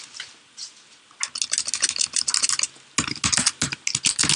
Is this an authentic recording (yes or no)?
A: yes